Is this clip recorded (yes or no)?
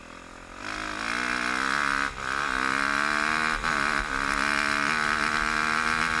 yes